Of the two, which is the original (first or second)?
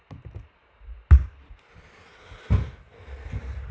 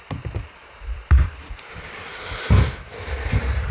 first